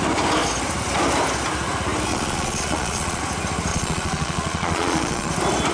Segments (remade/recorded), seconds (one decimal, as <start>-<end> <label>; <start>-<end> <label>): 0.0-2.1 recorded; 2.1-3.2 remade; 3.2-3.7 recorded; 3.7-5.3 remade; 5.3-5.7 recorded